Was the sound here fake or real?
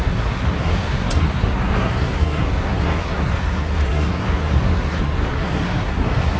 fake